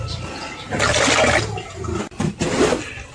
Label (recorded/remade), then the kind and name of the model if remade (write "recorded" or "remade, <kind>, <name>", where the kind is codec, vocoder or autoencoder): recorded